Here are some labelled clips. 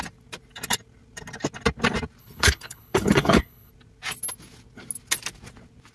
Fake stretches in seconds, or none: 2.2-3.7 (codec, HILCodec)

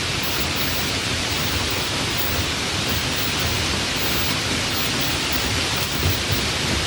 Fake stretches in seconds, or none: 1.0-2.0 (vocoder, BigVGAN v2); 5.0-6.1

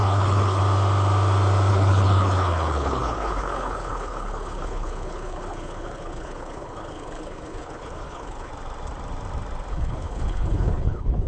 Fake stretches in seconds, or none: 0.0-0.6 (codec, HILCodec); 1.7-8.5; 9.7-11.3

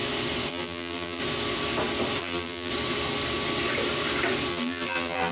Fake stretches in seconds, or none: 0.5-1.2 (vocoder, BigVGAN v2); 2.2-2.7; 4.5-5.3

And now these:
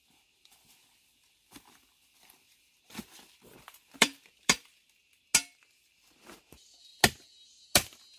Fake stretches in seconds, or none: 0.0-4.8 (vocoder, BigVGAN v2); 5.9-6.9

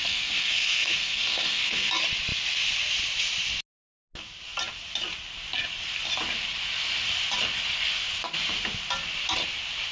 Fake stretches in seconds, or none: 0.0-1.9 (codec, SNAC)